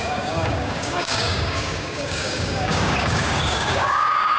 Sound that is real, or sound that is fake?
fake